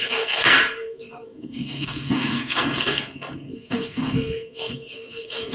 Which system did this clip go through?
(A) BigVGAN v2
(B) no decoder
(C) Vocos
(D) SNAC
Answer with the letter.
D